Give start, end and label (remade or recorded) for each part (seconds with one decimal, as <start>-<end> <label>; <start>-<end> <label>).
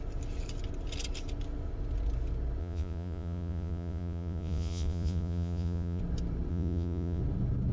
0.0-2.6 recorded; 2.6-6.0 remade; 6.0-6.5 recorded; 6.5-7.2 remade; 7.2-7.7 recorded